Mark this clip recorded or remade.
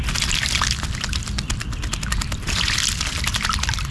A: recorded